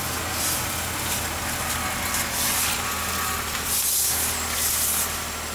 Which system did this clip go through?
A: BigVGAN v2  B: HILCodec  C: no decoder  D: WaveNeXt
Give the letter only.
C